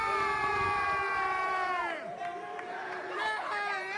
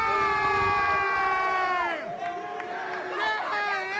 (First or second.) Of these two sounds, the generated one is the first